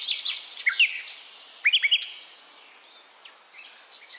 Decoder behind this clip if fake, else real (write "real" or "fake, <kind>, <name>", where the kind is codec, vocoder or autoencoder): real